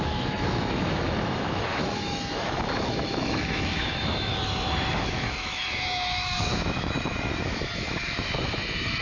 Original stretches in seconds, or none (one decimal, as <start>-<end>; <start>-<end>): 4.3-4.9